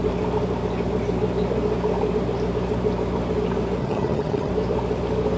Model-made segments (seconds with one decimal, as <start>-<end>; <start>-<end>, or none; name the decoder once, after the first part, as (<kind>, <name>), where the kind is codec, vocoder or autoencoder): 3.8-4.5 (vocoder, HiFi-GAN)